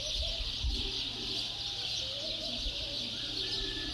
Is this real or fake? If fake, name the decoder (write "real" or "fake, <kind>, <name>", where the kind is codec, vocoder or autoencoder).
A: real